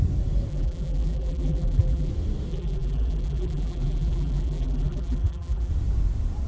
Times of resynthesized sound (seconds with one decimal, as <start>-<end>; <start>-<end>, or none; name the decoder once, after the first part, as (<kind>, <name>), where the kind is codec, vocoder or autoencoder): 0.5-2.1 (vocoder, BigVGAN v2); 2.5-5.7